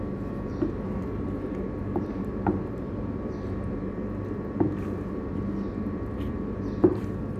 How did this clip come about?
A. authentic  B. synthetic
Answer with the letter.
B